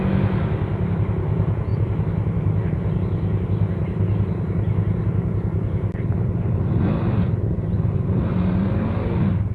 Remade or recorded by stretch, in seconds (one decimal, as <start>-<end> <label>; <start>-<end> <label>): 0.0-9.5 recorded